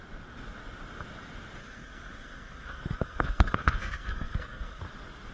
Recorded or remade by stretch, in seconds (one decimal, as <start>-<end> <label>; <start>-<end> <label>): 0.0-1.6 recorded; 1.6-4.8 remade; 4.8-5.3 recorded